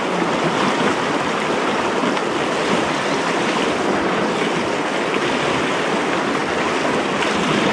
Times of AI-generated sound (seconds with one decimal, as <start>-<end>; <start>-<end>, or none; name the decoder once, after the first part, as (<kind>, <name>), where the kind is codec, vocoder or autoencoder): none